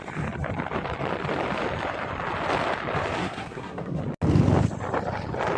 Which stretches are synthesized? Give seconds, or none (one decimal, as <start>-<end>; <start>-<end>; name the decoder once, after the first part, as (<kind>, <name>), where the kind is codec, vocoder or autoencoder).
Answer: 3.2-4.0 (codec, SNAC)